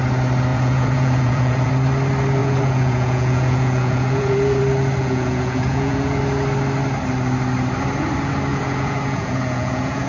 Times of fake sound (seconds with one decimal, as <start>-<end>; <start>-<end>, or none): 0.5-1.7; 2.4-4.6; 5.0-6.2; 8.5-10.1